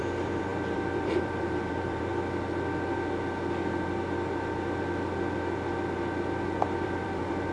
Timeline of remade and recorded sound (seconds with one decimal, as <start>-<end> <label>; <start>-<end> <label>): 0.0-2.1 remade; 2.1-6.6 recorded; 6.6-7.5 remade